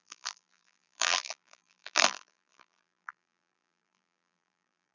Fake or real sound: fake